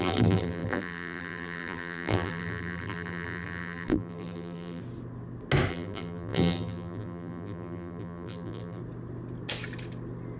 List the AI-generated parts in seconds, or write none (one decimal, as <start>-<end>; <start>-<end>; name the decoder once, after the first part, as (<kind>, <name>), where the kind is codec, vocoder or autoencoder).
0.0-4.8 (vocoder, BigVGAN v2); 5.7-8.8